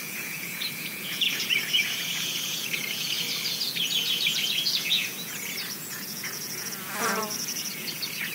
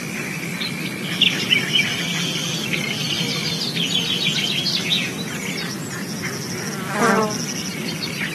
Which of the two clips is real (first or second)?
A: second